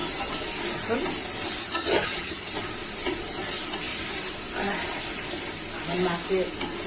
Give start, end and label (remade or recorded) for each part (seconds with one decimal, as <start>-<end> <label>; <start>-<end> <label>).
0.0-1.6 recorded; 1.6-2.5 remade; 2.5-6.9 recorded